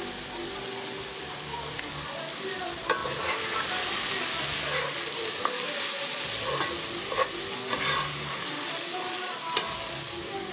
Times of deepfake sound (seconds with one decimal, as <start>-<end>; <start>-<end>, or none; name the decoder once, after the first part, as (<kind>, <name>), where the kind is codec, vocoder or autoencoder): none